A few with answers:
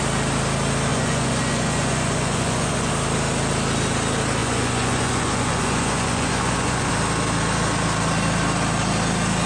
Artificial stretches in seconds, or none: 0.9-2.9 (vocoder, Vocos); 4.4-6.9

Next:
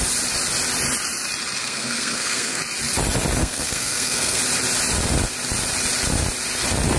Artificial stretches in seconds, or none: 1.6-2.6 (codec, SNAC); 3.4-4.4

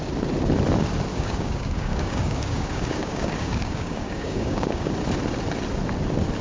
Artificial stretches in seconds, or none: 1.1-4.9 (codec, DAC)